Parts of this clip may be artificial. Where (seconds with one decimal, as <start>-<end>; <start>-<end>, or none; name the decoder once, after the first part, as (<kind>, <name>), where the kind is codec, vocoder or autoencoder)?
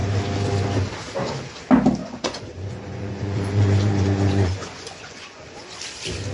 2.0-5.8 (vocoder, Vocos)